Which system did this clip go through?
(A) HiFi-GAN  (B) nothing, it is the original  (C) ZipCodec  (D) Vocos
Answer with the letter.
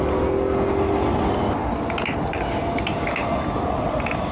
B